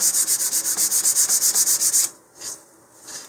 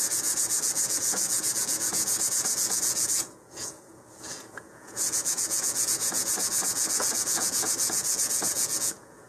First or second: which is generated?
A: second